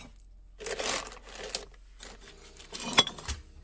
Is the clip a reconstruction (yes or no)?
no